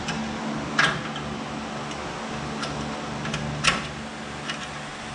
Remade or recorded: recorded